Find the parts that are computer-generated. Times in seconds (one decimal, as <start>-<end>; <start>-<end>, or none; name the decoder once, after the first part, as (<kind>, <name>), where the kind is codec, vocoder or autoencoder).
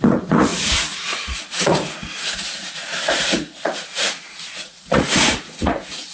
0.0-6.1 (vocoder, Vocos)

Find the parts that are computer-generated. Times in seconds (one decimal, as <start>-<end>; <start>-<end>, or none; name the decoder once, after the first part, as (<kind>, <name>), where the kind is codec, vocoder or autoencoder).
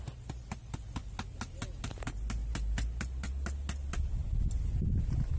none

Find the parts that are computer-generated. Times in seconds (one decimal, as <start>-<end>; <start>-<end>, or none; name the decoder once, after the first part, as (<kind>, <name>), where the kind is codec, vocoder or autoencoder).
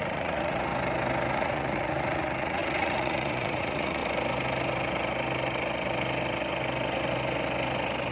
0.0-0.7 (vocoder, Vocos); 1.3-4.0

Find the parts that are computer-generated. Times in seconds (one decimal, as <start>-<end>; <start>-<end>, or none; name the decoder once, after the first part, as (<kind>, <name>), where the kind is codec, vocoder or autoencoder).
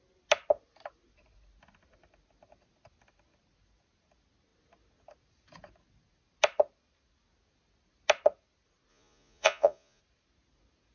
8.9-10.0 (vocoder, Vocos)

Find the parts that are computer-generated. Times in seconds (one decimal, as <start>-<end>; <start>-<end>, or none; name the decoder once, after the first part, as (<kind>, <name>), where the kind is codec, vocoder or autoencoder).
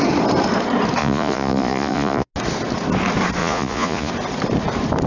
1.0-2.3 (vocoder, Vocos); 3.4-4.1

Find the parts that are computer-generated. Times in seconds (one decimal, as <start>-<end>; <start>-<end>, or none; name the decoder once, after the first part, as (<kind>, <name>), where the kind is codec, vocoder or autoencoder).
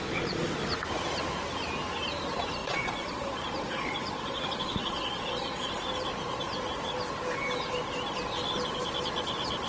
0.0-0.5 (vocoder, Vocos); 2.6-5.7